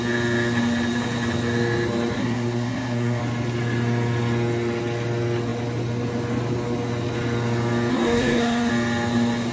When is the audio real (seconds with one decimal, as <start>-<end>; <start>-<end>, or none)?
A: 0.0-2.2; 3.2-7.9; 8.7-9.5